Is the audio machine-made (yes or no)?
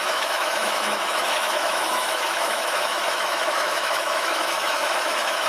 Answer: yes